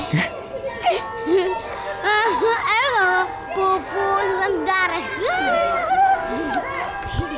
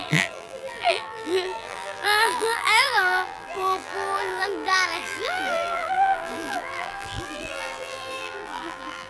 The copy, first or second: second